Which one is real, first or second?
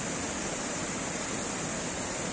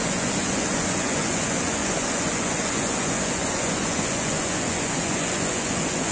first